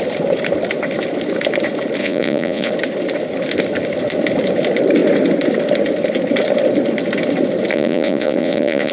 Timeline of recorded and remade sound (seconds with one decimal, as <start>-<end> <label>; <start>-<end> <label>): 0.0-2.0 recorded; 2.0-2.7 remade; 2.7-7.7 recorded; 7.7-8.9 remade